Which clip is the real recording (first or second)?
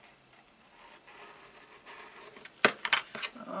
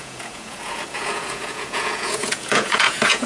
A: first